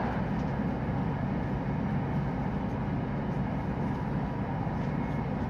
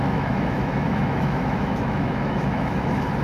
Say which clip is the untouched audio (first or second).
first